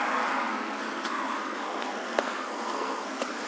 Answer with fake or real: fake